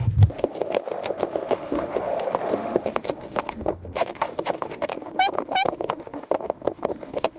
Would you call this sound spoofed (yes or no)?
yes